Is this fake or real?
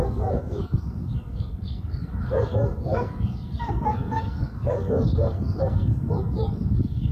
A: fake